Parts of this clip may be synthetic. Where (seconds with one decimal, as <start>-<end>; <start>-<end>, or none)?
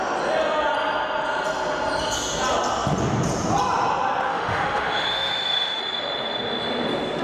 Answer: 4.3-5.8